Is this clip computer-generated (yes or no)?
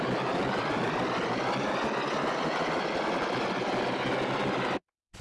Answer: no